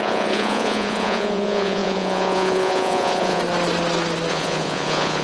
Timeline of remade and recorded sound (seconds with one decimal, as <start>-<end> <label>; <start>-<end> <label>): 0.0-3.4 remade; 3.4-4.3 recorded; 4.3-5.2 remade